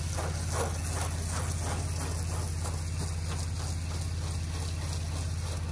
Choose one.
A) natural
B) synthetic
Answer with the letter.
A